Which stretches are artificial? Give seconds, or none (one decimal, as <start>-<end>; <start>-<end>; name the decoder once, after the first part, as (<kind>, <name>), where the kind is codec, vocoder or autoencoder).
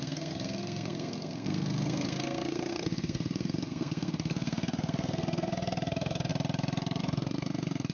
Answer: 0.0-6.3 (codec, SNAC); 7.0-7.9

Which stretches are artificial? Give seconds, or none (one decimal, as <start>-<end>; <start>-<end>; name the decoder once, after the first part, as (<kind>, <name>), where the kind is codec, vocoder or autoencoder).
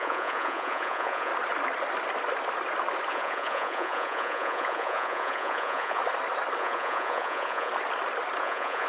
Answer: 0.0-1.3 (vocoder, Vocos); 3.1-6.0; 6.6-7.7; 8.4-8.9